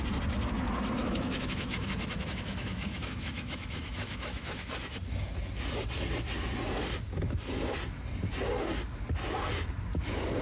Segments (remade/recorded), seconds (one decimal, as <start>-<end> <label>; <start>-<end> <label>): 0.0-1.0 recorded; 1.0-4.7 remade; 4.7-10.4 recorded